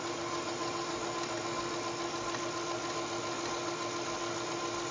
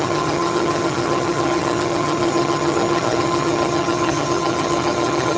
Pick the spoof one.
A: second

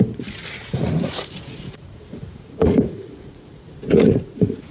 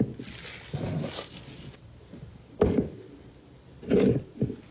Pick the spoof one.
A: first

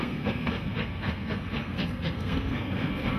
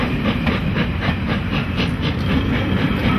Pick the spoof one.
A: first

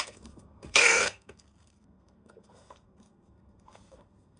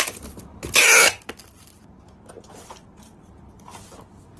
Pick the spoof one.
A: first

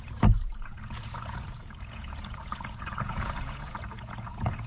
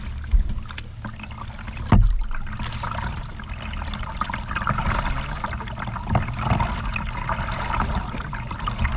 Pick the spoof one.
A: first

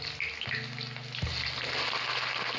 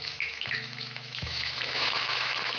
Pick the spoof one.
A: second